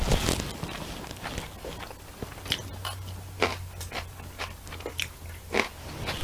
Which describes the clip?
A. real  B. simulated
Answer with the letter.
A